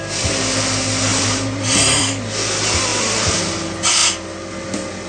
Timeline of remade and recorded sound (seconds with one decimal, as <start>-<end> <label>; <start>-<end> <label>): 0.0-1.1 recorded; 1.1-2.0 remade; 2.0-2.9 recorded; 2.9-3.4 remade; 3.4-5.1 recorded